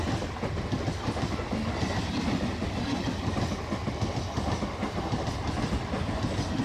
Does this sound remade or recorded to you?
recorded